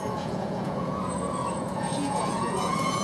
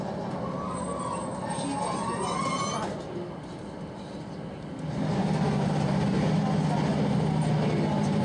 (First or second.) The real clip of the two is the second